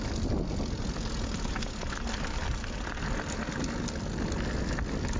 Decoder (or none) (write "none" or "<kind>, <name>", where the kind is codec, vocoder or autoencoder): none